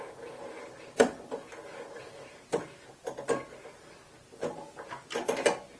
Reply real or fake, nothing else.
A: real